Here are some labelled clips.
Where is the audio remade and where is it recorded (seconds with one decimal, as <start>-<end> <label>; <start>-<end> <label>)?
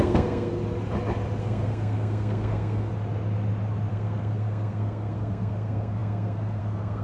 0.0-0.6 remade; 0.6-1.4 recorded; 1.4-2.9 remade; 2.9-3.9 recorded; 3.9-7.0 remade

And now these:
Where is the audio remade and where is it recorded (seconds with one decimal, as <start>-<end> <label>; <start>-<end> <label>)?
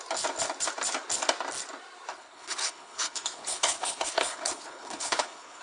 0.0-2.1 recorded; 2.1-5.6 remade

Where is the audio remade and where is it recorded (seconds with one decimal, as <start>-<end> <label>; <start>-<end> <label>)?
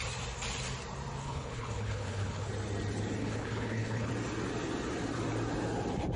0.0-1.2 recorded; 1.2-2.5 remade; 2.5-3.2 recorded; 3.2-4.1 remade; 4.1-6.2 recorded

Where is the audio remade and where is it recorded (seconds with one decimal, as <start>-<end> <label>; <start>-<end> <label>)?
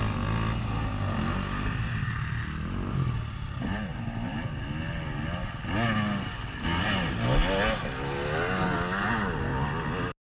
0.0-3.9 recorded; 3.9-4.5 remade; 4.5-10.3 recorded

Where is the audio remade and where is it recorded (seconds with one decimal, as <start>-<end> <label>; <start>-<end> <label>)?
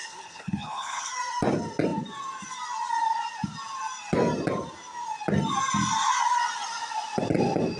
0.0-1.1 remade; 1.1-7.8 recorded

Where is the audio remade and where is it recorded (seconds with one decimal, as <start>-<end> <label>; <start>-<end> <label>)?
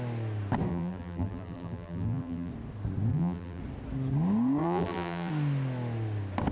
0.0-0.7 recorded; 0.7-2.5 remade; 2.5-3.1 recorded; 3.1-3.6 remade; 3.6-4.6 recorded; 4.6-5.3 remade; 5.3-6.5 recorded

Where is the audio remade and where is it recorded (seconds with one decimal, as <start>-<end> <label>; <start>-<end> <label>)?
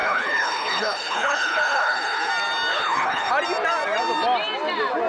0.0-2.3 remade; 2.3-2.7 recorded; 2.7-3.3 remade; 3.3-5.1 recorded